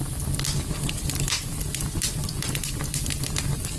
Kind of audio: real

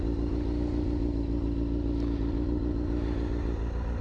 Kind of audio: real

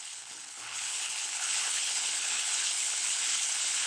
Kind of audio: fake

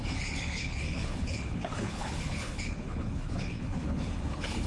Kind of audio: fake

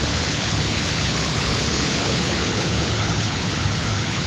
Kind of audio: fake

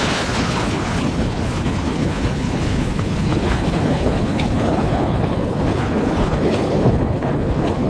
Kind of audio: fake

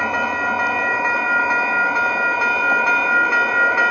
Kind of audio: real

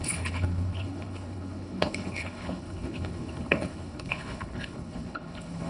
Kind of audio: fake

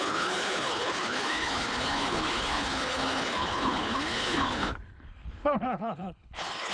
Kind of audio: fake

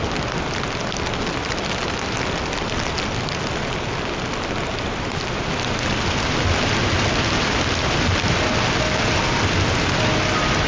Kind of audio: real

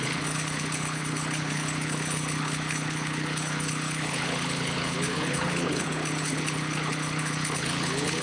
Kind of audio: fake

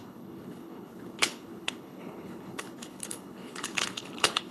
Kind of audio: fake